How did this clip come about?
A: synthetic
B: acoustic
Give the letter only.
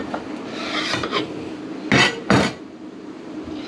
B